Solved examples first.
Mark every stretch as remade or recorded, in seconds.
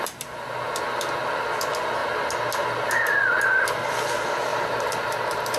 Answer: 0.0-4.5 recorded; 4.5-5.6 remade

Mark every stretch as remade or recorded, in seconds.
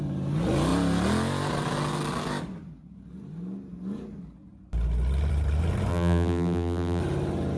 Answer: 0.0-5.9 recorded; 5.9-7.0 remade; 7.0-7.6 recorded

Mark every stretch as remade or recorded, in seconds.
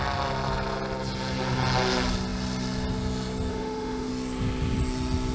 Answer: 0.0-3.5 recorded; 3.5-4.1 remade; 4.1-5.3 recorded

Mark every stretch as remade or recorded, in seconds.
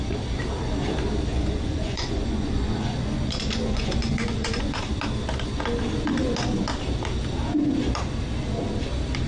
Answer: 0.0-1.3 recorded; 1.3-4.9 remade; 4.9-9.3 recorded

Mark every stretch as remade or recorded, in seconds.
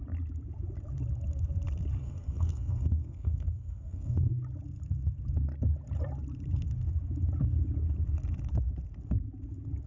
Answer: 0.0-2.0 recorded; 2.0-4.3 remade; 4.3-9.9 recorded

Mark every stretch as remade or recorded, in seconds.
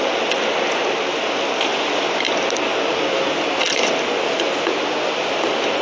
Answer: 0.0-5.8 recorded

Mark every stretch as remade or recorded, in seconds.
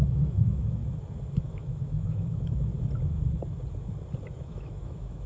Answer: 0.0-0.8 remade; 0.8-1.4 recorded; 1.4-2.7 remade; 2.7-4.3 recorded; 4.3-5.3 remade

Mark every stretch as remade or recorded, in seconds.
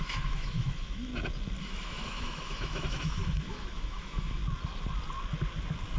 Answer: 0.0-1.1 remade; 1.1-1.6 recorded; 1.6-4.4 remade; 4.4-6.0 recorded